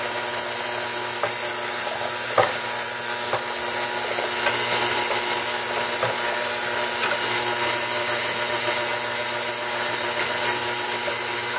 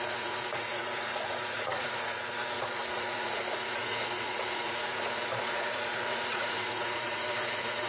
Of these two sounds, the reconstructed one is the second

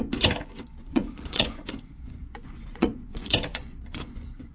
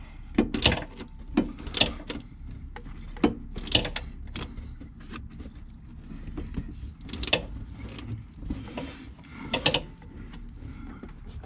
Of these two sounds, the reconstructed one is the first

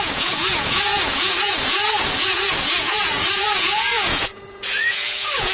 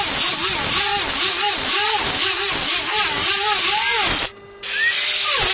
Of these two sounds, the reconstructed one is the first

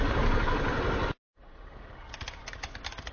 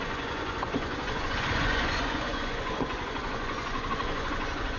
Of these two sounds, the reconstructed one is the second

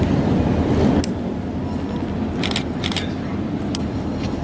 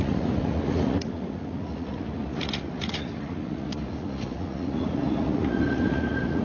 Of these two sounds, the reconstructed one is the second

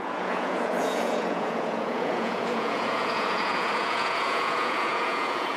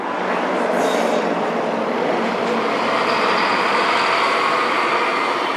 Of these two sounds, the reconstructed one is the first